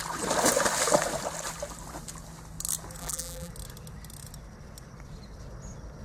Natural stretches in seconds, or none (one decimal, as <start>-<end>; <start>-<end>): 0.0-3.0; 3.5-6.0